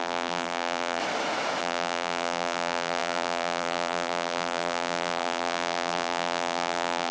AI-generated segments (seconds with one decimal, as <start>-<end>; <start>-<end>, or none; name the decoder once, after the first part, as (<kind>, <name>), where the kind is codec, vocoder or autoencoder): 0.0-1.0 (vocoder, BigVGAN v2); 1.6-7.1

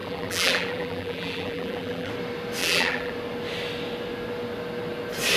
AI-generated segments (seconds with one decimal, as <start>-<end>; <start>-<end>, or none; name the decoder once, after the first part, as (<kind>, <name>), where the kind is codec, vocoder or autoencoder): 0.0-2.1 (vocoder, BigVGAN v2); 2.6-3.1

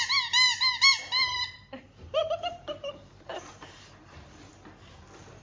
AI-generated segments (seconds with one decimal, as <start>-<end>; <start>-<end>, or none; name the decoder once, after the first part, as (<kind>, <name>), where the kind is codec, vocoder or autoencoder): 1.3-4.5 (vocoder, BigVGAN v2)

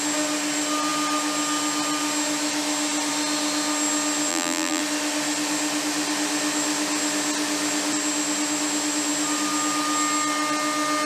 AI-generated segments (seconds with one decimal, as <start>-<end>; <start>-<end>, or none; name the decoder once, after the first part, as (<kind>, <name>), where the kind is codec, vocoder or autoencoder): 4.3-4.8 (vocoder, BigVGAN v2)

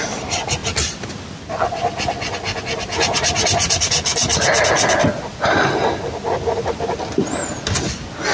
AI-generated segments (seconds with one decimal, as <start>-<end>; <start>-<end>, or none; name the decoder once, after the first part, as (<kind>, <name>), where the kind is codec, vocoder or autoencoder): none